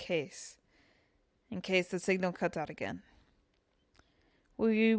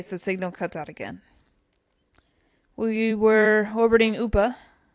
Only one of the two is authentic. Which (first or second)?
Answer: first